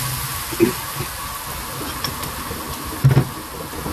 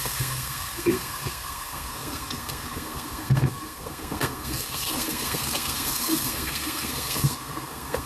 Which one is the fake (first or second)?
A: second